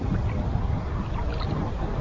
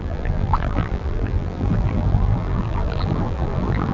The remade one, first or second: second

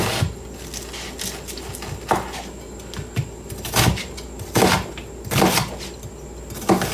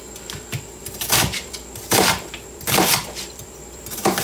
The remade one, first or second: second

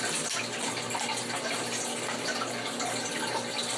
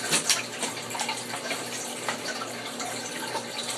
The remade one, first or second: second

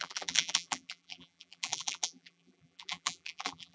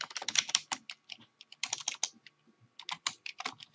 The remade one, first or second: first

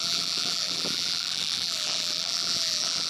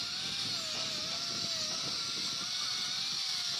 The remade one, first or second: first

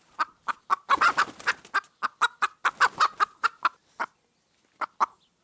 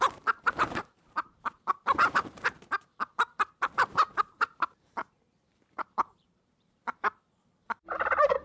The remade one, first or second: second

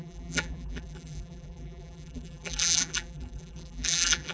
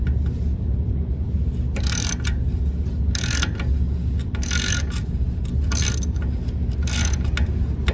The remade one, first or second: first